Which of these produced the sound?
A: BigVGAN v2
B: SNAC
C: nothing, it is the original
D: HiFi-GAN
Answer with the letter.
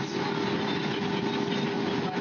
C